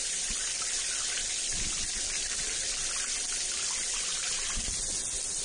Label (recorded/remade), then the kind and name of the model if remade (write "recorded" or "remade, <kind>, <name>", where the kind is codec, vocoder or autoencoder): recorded